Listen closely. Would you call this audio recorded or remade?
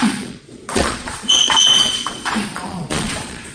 remade